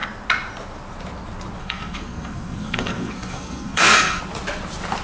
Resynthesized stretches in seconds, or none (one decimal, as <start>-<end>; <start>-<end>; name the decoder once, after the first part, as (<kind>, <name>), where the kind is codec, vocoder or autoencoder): 1.6-4.2 (codec, SNAC)